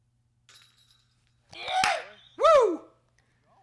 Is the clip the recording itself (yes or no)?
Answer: yes